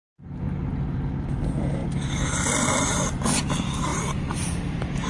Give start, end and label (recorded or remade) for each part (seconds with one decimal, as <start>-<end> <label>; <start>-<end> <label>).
0.0-3.9 recorded; 3.9-5.1 remade